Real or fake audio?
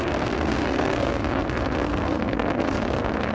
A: fake